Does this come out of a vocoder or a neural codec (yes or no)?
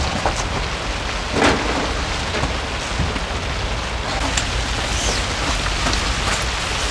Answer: no